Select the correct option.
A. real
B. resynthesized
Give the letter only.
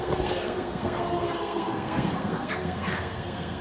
B